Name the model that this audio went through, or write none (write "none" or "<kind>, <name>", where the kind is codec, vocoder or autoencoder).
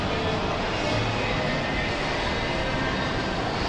none